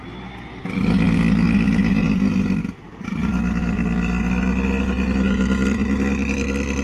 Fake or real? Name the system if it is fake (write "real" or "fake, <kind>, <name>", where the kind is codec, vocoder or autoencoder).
real